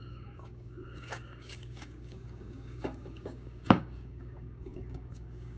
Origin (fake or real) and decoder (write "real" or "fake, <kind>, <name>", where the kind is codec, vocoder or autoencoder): fake, codec, DAC